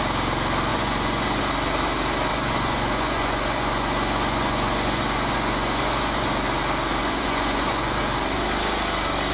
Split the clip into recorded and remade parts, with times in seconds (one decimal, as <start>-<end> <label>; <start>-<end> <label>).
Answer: 0.0-0.7 recorded; 0.7-1.4 remade; 1.4-2.3 recorded; 2.3-6.3 remade; 6.3-7.0 recorded; 7.0-8.0 remade; 8.0-9.3 recorded